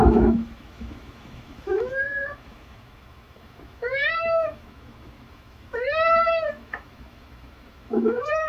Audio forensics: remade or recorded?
remade